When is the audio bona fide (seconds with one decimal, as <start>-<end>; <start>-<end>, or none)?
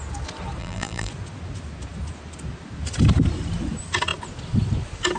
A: 0.0-0.6; 1.1-5.2